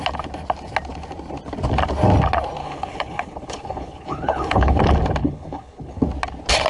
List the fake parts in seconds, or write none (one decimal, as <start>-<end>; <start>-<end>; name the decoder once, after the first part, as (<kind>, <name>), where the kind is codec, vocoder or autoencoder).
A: 2.6-4.8 (codec, HILCodec); 5.2-6.0